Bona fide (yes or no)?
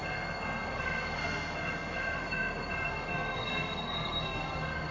no